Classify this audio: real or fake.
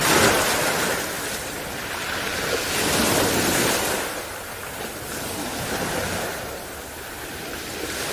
real